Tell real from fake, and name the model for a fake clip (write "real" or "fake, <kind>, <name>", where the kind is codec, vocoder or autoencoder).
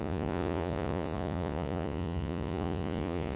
fake, vocoder, Vocos